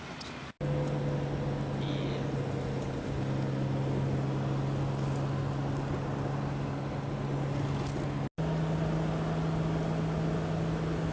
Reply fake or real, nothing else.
real